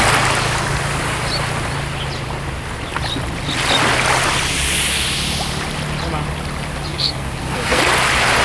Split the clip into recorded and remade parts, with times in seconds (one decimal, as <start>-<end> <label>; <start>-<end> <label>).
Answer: 0.0-6.9 recorded; 6.9-7.8 remade; 7.8-8.4 recorded